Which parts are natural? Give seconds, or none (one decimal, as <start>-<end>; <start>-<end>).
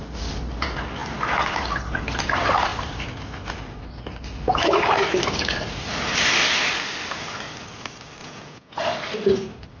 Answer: 0.0-8.2; 8.8-9.8